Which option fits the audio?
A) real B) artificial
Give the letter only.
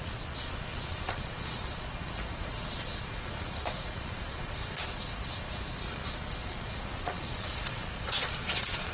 B